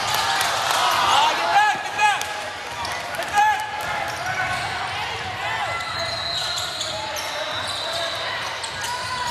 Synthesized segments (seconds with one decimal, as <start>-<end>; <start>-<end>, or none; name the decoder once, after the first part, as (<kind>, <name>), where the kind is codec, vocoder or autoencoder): 1.5-5.1 (vocoder, BigVGAN v2)